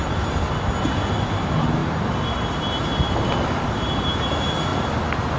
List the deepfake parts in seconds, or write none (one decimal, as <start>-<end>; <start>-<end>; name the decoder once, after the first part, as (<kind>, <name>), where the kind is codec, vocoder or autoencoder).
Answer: 0.0-0.7 (vocoder, BigVGAN v2); 1.8-4.3